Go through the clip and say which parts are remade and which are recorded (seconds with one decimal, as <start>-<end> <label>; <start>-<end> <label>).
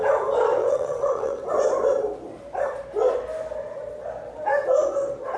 0.0-0.6 recorded; 0.6-1.5 remade; 1.5-5.4 recorded